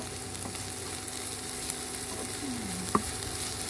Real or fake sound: real